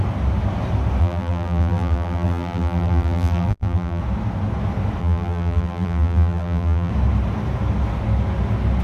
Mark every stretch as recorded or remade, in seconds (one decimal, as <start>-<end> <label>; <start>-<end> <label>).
0.0-1.0 recorded; 1.0-4.0 remade; 4.0-5.0 recorded; 5.0-6.9 remade; 6.9-8.8 recorded